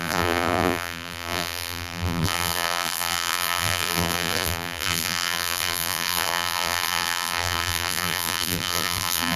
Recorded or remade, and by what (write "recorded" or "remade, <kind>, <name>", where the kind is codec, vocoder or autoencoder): remade, vocoder, BigVGAN v2